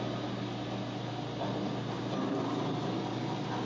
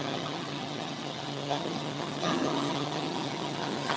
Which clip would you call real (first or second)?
first